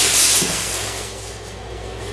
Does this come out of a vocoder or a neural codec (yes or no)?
yes